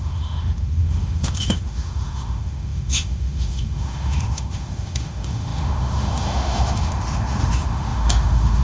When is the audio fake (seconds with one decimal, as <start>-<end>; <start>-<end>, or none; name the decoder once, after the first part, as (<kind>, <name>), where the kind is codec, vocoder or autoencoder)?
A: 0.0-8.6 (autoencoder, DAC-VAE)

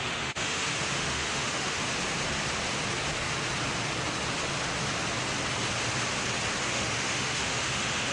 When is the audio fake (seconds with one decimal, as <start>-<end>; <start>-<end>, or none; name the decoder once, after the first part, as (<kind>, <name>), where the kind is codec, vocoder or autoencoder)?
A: 0.0-1.8 (autoencoder, DAC-VAE); 6.7-8.1

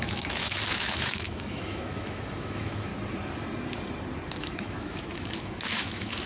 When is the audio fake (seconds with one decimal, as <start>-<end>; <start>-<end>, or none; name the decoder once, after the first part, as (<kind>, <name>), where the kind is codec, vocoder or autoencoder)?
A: 0.0-2.9 (autoencoder, DAC-VAE); 4.4-6.3